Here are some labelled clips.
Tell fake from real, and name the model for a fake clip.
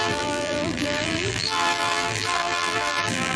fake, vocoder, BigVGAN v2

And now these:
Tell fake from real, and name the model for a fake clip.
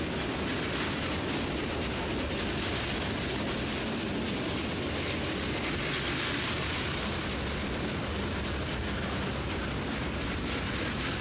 real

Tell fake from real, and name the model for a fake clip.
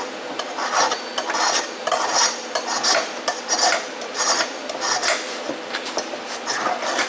real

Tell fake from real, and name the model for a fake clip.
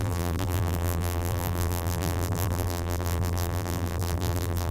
fake, vocoder, BigVGAN v2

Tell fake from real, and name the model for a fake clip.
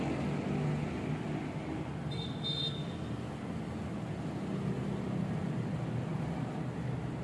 real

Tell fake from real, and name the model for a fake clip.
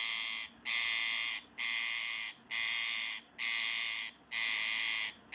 real